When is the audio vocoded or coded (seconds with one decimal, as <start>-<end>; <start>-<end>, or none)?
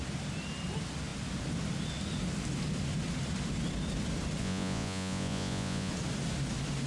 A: 4.4-5.9